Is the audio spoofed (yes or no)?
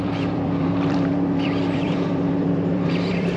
yes